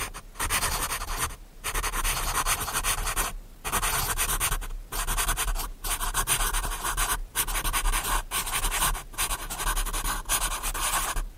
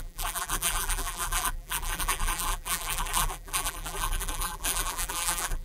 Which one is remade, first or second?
second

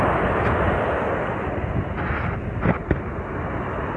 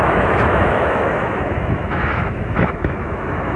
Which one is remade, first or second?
second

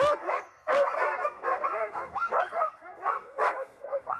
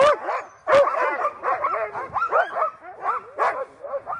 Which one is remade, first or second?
first